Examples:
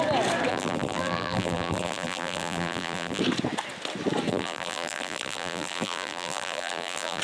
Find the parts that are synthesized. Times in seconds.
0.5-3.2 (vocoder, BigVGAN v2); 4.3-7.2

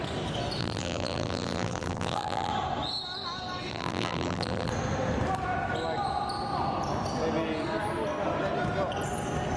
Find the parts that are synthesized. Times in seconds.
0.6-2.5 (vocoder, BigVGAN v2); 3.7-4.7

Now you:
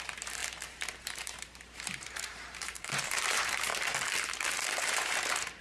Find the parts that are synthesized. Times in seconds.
0.0-0.4 (vocoder, BigVGAN v2); 1.0-3.7; 4.8-5.6

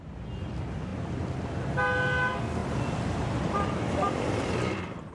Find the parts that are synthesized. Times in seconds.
2.6-5.1 (vocoder, BigVGAN v2)

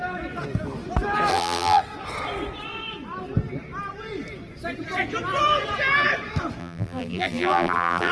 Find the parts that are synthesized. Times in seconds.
1.3-1.8 (vocoder, BigVGAN v2); 6.6-8.1

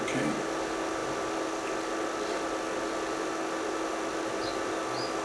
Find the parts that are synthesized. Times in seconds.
none

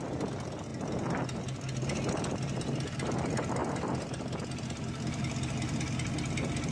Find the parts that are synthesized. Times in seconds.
none

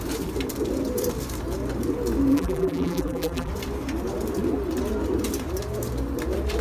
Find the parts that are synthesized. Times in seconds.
2.3-3.5 (vocoder, BigVGAN v2)